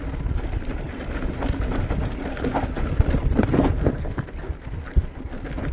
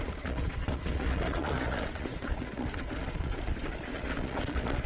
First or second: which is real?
first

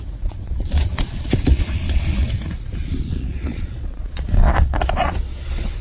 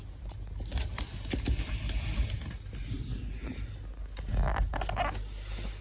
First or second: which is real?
second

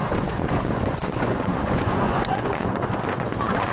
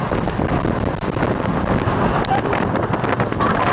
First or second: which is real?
second